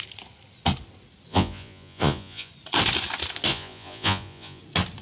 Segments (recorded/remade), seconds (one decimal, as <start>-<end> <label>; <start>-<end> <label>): 0.0-1.3 recorded; 1.3-2.5 remade; 2.5-3.5 recorded; 3.5-4.6 remade; 4.6-5.0 recorded